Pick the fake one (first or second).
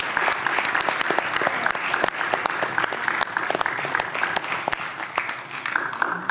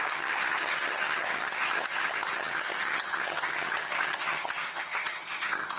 second